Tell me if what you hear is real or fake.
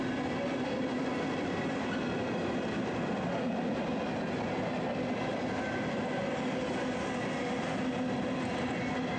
real